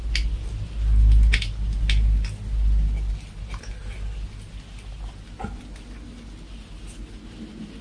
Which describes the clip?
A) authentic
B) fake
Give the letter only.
A